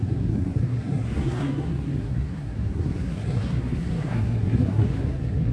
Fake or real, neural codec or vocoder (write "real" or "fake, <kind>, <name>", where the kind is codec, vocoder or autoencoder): fake, codec, SNAC